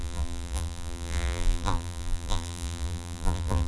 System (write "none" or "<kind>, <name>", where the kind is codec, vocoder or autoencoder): vocoder, BigVGAN v2